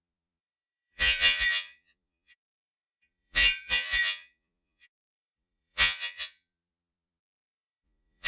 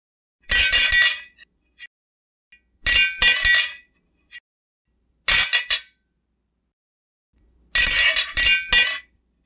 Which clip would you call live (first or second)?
second